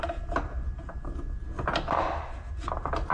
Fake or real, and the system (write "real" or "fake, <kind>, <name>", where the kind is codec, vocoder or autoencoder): real